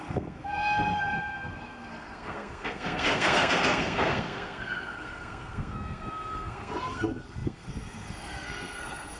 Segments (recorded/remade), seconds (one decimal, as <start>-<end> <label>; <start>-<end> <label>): 0.0-9.2 remade